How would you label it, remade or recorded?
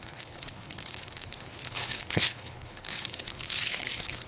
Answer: remade